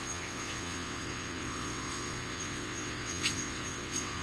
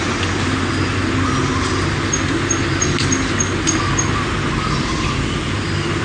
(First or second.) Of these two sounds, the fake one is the first